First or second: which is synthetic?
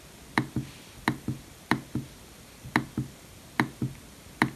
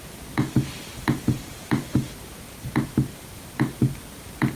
second